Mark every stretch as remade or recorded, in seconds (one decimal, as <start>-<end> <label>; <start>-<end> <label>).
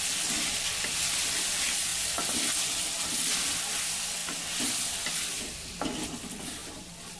0.0-7.2 recorded